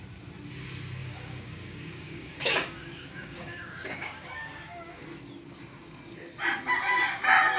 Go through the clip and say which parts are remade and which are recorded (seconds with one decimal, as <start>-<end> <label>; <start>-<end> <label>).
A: 0.0-1.0 recorded; 1.0-5.0 remade; 5.0-7.6 recorded